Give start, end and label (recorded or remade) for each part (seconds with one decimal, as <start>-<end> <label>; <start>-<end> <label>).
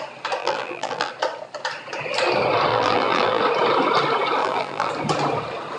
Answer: 0.0-0.4 recorded; 0.4-1.1 remade; 1.1-2.7 recorded; 2.7-3.4 remade; 3.4-4.4 recorded; 4.4-4.9 remade; 4.9-5.8 recorded